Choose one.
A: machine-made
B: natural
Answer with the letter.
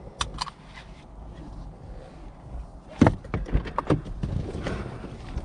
B